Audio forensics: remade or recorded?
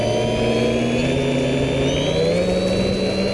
recorded